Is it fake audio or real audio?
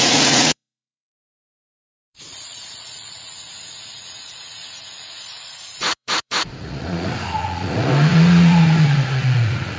fake